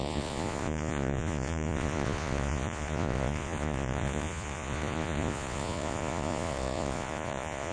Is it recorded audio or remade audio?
remade